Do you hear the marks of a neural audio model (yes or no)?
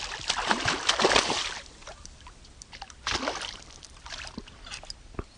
yes